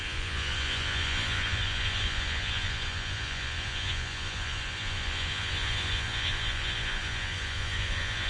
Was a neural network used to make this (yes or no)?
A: yes